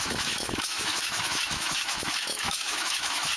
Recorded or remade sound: remade